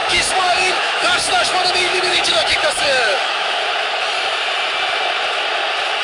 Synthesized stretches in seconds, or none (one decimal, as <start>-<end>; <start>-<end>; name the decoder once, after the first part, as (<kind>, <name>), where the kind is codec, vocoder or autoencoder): 0.0-3.6 (autoencoder, DAC-VAE)